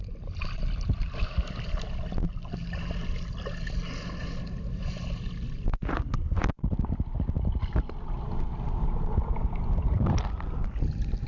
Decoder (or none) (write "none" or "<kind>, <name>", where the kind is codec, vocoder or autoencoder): none